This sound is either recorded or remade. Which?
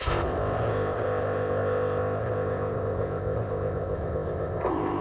remade